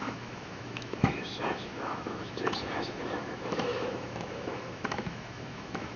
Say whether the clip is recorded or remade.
remade